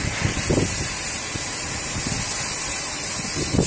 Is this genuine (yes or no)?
yes